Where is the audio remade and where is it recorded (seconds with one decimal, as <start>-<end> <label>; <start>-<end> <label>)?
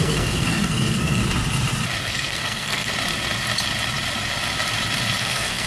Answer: 0.0-1.2 remade; 1.2-2.0 recorded; 2.0-2.9 remade; 2.9-5.2 recorded; 5.2-5.7 remade